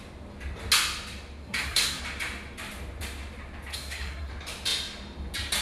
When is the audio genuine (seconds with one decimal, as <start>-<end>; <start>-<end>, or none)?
0.0-1.4; 2.0-3.7; 4.3-5.6